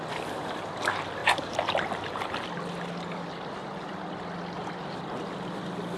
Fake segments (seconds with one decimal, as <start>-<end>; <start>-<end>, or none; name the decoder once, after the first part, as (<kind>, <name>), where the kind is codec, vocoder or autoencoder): none